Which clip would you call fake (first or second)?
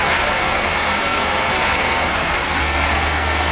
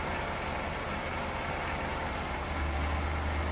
first